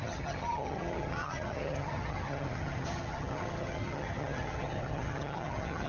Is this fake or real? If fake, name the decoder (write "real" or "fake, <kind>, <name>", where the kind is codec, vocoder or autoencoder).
fake, vocoder, HiFi-GAN